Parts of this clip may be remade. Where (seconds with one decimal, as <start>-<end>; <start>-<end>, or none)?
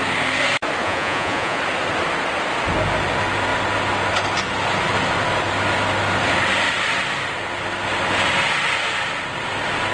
0.8-1.6